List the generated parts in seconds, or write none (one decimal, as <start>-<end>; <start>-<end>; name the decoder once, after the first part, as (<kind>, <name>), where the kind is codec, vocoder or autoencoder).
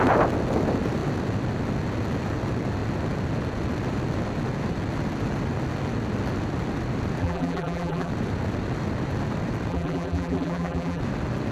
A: 7.2-8.1 (vocoder, BigVGAN v2); 9.7-11.0